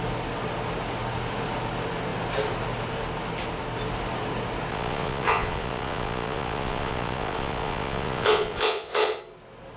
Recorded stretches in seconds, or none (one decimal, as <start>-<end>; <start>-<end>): 0.0-4.7; 9.2-9.8

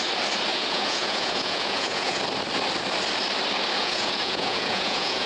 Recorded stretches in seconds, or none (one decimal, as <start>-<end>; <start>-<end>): 0.0-0.5; 2.2-3.8

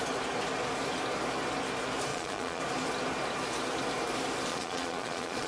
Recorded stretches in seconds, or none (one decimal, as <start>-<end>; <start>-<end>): 0.0-2.1; 2.6-4.5

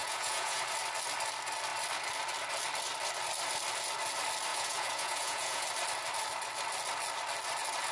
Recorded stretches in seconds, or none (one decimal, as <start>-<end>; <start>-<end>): 0.6-4.5; 5.6-7.9

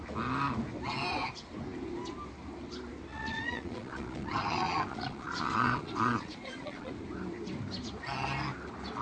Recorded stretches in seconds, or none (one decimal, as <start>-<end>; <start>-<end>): 0.0-3.1; 6.9-9.0

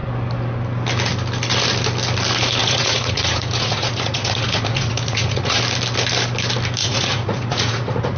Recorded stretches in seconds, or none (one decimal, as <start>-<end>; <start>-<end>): 0.0-2.6; 5.6-6.8